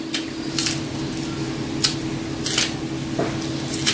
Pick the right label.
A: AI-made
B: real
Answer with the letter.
B